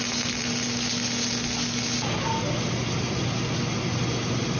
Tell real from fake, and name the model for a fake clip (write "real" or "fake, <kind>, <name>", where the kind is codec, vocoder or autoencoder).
real